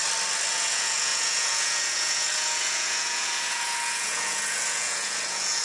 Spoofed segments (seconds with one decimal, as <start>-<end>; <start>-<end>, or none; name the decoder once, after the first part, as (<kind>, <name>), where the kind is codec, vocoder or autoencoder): 0.5-5.6 (vocoder, Vocos)